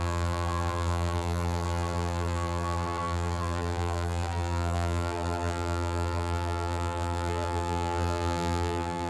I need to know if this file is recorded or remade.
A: remade